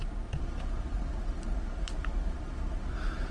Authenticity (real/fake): real